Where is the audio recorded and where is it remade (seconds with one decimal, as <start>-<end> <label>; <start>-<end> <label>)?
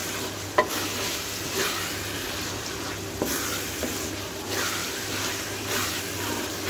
0.0-4.8 recorded; 4.8-6.0 remade; 6.0-6.7 recorded